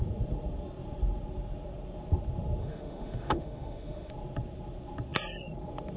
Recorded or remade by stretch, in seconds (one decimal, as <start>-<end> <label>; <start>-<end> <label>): 0.0-2.6 recorded; 2.6-4.1 remade; 4.1-6.0 recorded